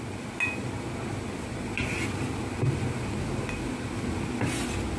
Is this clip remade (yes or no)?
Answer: no